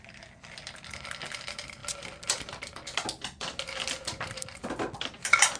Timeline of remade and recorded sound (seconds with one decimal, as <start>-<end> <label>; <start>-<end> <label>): 0.0-5.6 recorded

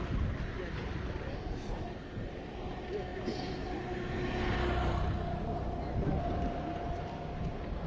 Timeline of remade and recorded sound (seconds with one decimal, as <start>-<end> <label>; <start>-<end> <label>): 0.0-7.9 recorded

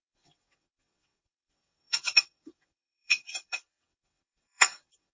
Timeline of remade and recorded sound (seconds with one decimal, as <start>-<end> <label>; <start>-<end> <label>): 0.0-5.1 remade

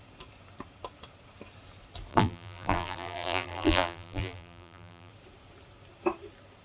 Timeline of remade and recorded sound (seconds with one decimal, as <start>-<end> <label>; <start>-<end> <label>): 0.0-2.1 recorded; 2.1-5.1 remade; 5.1-6.6 recorded

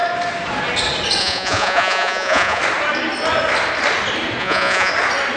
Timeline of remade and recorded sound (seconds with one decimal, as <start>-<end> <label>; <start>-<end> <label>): 0.0-1.2 recorded; 1.2-2.6 remade; 2.6-4.4 recorded; 4.4-4.9 remade; 4.9-5.4 recorded